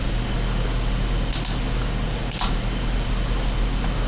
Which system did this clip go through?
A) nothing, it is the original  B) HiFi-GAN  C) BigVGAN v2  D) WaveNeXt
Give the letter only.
A